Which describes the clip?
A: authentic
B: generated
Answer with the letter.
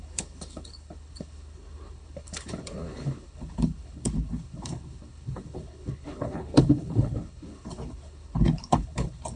B